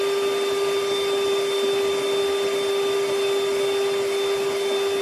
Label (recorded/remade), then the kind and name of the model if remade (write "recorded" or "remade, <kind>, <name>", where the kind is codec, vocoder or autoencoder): recorded